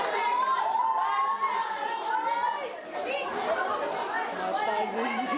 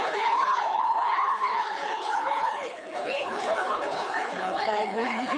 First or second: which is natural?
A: first